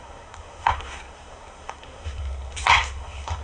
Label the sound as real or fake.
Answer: fake